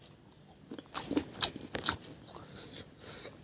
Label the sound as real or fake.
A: real